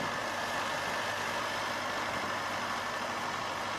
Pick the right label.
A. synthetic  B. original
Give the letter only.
A